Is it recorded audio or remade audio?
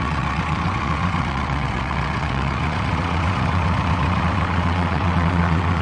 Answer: remade